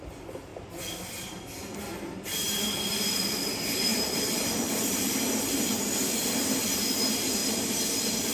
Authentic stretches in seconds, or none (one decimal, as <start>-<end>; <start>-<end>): 0.0-3.9; 6.6-8.3